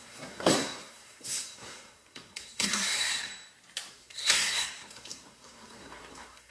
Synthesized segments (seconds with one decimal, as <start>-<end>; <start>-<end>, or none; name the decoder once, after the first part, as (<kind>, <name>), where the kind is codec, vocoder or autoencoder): 0.0-3.3 (codec, SNAC); 3.9-6.5

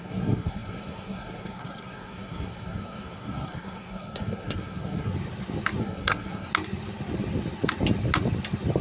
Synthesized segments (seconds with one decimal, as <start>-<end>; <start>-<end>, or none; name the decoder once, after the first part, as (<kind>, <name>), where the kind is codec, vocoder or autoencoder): 0.0-5.1 (codec, SNAC); 5.8-6.5

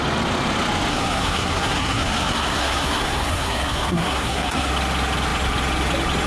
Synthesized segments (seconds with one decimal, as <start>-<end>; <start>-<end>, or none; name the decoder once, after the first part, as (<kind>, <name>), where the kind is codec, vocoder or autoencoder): 0.9-4.7 (codec, SNAC)

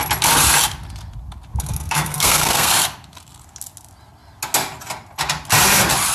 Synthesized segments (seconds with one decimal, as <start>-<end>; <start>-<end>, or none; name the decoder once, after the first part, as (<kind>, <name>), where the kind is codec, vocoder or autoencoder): 1.5-2.7 (codec, SNAC)

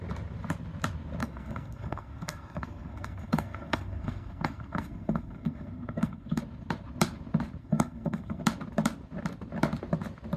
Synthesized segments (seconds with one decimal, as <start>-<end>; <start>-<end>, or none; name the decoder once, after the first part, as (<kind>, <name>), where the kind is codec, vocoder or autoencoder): 1.2-6.4 (codec, SNAC); 7.6-8.4

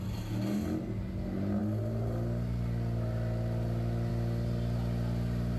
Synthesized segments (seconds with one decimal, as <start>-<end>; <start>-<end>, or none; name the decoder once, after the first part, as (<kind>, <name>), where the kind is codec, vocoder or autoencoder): none

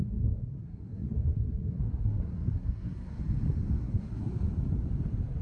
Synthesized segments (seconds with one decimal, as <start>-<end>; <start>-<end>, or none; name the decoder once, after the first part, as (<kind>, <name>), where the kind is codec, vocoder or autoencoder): 0.0-3.2 (codec, SNAC); 3.8-4.3